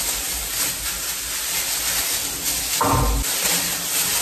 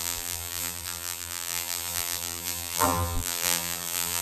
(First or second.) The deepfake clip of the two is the second